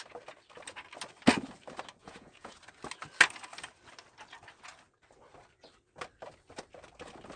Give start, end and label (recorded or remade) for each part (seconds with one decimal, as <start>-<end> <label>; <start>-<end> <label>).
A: 0.0-2.0 recorded; 2.0-2.6 remade; 2.6-7.4 recorded